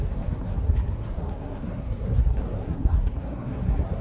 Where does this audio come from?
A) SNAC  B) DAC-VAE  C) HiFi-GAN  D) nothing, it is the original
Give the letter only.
A